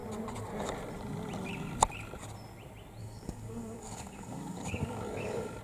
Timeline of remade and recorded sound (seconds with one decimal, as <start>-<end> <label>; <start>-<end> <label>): 0.0-3.0 recorded; 3.0-5.6 remade